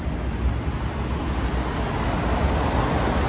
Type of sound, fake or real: real